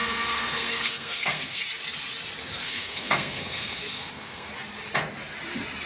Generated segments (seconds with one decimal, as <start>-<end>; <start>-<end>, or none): 0.0-1.6; 2.6-4.5